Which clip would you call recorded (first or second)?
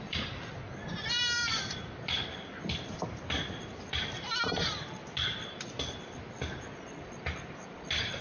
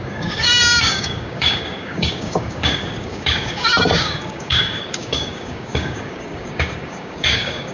first